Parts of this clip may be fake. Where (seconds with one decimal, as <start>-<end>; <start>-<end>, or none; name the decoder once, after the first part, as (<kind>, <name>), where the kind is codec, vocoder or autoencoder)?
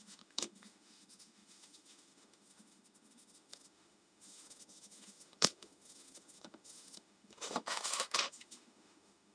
0.0-9.3 (autoencoder, DAC-VAE)